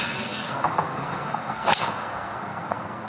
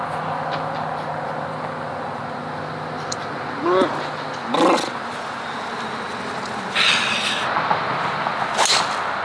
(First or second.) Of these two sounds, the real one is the second